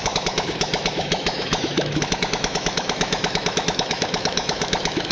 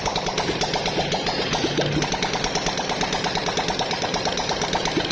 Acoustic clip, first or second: second